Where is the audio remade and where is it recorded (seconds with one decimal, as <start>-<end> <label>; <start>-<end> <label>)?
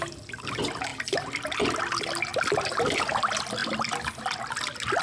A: 0.0-5.0 recorded